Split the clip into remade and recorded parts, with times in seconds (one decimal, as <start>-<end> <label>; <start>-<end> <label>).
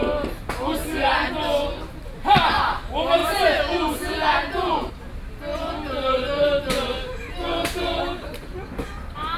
0.0-3.2 recorded; 3.2-4.9 remade; 4.9-9.4 recorded